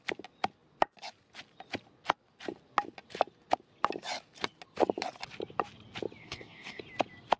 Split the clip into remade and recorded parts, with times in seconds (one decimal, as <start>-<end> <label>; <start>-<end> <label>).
0.0-6.2 recorded; 6.2-6.8 remade; 6.8-7.4 recorded